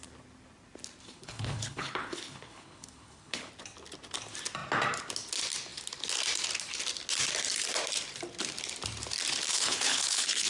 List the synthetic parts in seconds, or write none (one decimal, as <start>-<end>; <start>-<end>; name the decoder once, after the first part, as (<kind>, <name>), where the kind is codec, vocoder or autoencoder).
1.0-3.5 (codec, HILCodec); 9.5-10.5